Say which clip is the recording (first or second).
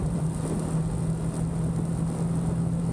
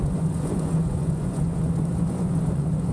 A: first